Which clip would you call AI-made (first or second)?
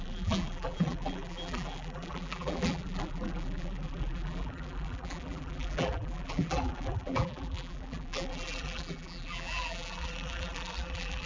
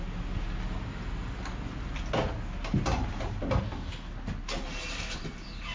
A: first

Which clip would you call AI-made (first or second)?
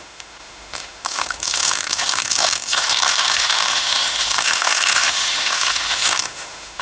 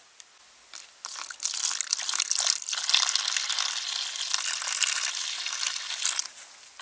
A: first